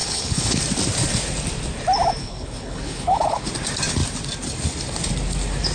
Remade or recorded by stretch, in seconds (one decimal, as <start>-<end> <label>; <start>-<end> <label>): 0.0-0.6 remade; 0.6-2.2 recorded; 2.2-3.5 remade; 3.5-5.7 recorded